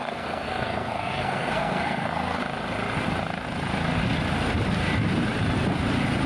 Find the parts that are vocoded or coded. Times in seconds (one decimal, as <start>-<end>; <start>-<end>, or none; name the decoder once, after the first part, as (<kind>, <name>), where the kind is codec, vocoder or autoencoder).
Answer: 0.0-2.4 (codec, SNAC)